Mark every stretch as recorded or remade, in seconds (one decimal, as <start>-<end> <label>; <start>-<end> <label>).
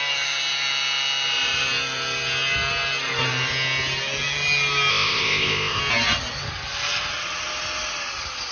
0.0-4.9 recorded; 4.9-5.8 remade; 5.8-8.5 recorded